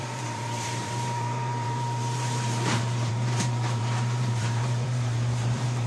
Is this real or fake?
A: fake